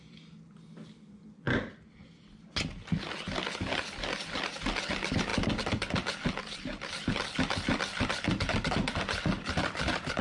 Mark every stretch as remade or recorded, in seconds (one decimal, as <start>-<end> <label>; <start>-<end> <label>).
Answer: 0.0-10.2 recorded